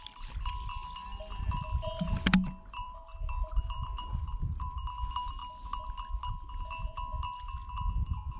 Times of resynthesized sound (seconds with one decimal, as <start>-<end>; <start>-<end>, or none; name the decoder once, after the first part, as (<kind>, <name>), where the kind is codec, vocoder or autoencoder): 2.8-4.9 (vocoder, BigVGAN v2)